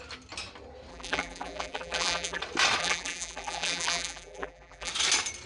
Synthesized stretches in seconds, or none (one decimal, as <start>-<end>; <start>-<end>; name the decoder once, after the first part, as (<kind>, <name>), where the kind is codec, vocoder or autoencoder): 0.9-2.4 (vocoder, BigVGAN v2); 2.8-4.9